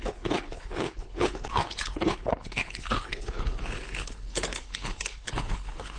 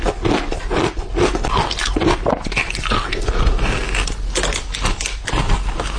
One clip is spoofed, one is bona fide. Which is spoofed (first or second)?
first